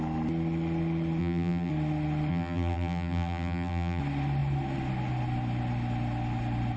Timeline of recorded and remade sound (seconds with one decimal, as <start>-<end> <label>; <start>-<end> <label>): 0.0-1.2 recorded; 1.2-1.7 remade; 1.7-2.3 recorded; 2.3-4.0 remade; 4.0-6.8 recorded